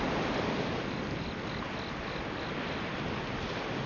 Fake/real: real